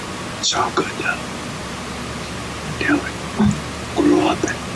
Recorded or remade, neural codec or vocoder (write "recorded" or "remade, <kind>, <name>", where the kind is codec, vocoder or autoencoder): recorded